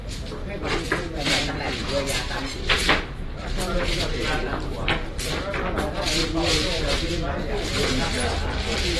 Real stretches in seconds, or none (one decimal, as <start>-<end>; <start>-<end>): 1.5-3.4; 4.9-9.0